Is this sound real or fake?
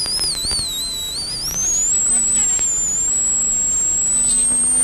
real